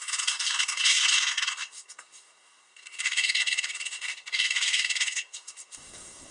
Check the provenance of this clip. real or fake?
fake